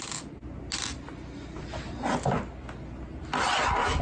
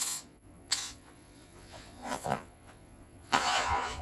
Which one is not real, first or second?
second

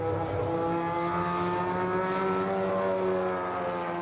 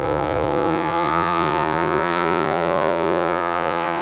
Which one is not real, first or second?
second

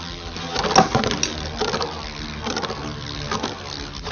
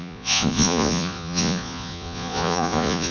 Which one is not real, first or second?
second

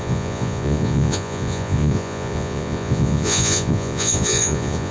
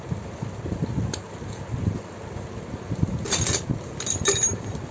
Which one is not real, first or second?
first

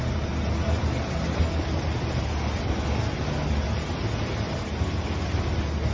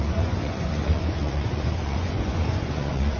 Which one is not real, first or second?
second